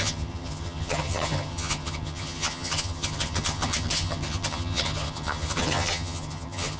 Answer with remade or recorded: remade